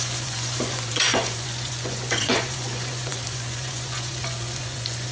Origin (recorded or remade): remade